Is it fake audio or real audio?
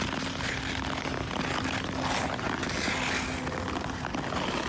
real